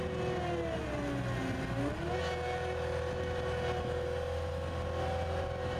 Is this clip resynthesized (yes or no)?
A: no